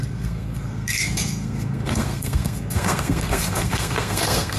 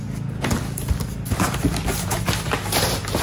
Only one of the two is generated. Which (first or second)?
first